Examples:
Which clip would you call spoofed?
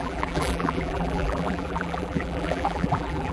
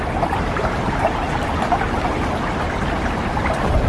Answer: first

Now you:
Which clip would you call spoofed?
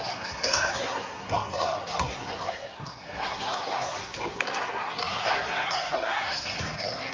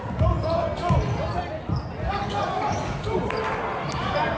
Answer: first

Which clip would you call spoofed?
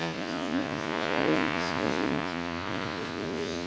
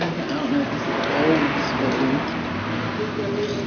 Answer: first